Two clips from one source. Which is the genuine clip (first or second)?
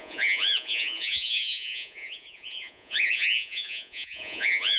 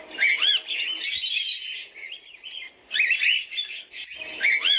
second